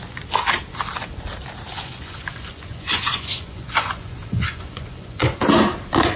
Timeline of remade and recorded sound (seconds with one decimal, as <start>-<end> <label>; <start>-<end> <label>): 0.0-1.7 recorded; 1.7-5.4 remade; 5.4-6.2 recorded